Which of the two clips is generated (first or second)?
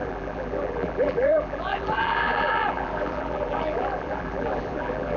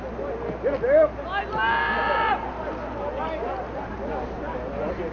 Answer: first